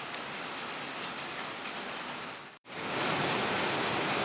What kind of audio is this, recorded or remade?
recorded